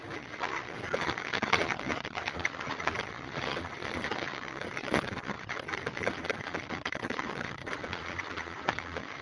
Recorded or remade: remade